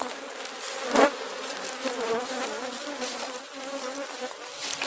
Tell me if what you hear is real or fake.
real